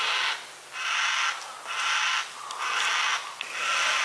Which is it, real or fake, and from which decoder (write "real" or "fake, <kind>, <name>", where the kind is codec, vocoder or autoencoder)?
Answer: real